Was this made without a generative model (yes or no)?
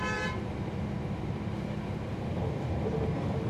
no